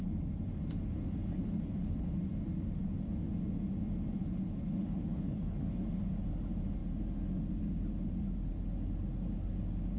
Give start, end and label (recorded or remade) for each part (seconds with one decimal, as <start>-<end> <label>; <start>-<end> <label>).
0.0-1.3 recorded; 1.3-2.1 remade; 2.1-4.2 recorded; 4.2-5.7 remade; 5.7-10.0 recorded